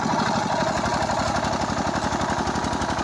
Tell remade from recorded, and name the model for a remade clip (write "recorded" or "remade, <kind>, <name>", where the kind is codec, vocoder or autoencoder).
recorded